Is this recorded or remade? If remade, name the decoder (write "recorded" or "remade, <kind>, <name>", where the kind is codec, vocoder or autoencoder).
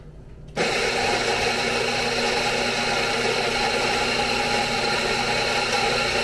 recorded